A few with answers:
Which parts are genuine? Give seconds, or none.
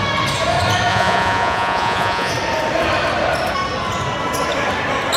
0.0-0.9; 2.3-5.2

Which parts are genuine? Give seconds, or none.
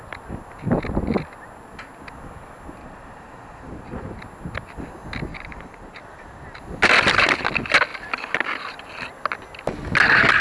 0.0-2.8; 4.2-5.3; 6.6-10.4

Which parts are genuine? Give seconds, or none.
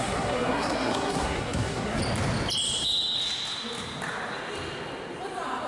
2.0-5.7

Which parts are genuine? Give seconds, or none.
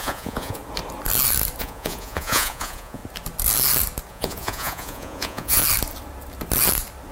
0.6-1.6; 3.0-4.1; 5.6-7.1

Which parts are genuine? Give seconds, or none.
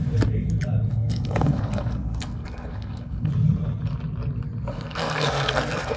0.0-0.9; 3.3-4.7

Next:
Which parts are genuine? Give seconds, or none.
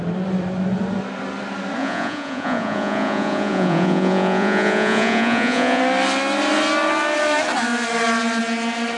0.0-1.8; 5.8-9.0